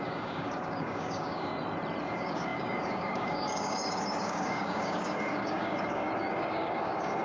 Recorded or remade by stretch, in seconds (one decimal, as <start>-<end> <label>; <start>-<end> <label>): 0.0-1.5 remade; 1.5-2.0 recorded; 2.0-7.2 remade